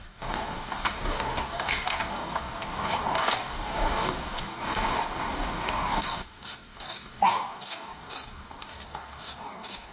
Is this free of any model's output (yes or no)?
no